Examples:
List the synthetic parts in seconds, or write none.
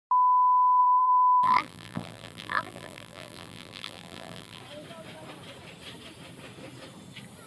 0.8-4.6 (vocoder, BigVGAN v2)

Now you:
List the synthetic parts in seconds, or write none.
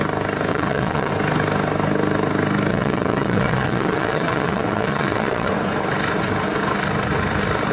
0.5-1.1 (vocoder, WaveNeXt); 2.7-5.5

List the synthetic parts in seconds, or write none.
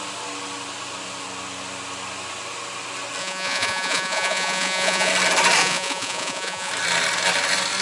3.2-5.1 (vocoder, Vocos); 5.6-6.7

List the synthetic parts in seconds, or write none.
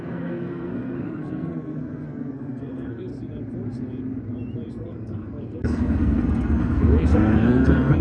0.0-3.1 (codec, SNAC); 4.7-8.0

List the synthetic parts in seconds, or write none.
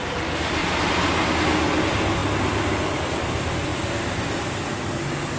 0.6-1.3 (vocoder, BigVGAN v2)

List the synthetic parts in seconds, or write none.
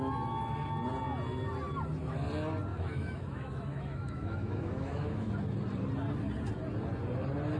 2.7-5.3 (autoencoder, DAC-VAE)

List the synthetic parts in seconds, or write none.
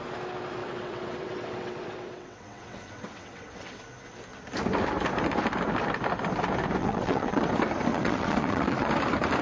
0.6-3.8 (vocoder, WaveNeXt); 6.8-7.5; 7.9-8.9